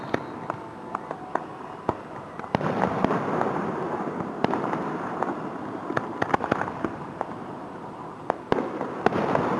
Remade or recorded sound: remade